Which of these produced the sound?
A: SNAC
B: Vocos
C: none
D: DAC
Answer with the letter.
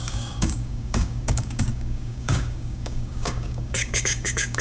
D